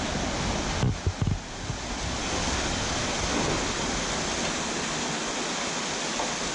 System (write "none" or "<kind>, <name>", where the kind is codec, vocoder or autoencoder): none